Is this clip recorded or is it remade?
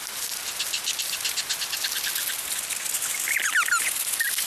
recorded